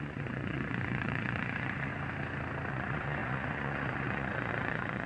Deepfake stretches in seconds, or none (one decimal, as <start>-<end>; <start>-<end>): 0.0-1.9; 2.7-5.1